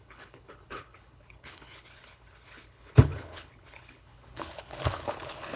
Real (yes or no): no